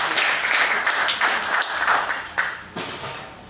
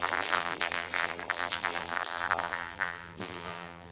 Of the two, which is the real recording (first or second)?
first